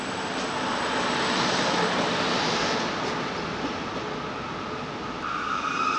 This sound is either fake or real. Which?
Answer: real